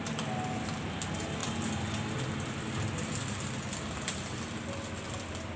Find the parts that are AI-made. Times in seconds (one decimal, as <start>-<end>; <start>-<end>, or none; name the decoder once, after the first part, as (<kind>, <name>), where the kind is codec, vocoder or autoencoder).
none

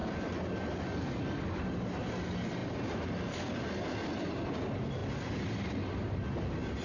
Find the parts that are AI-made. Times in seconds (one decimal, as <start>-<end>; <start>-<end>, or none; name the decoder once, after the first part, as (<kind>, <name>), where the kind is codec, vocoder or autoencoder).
none